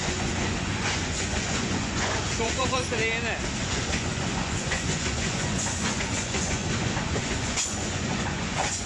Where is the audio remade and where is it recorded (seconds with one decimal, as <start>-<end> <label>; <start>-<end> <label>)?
0.0-3.0 remade; 3.0-3.6 recorded; 3.6-8.9 remade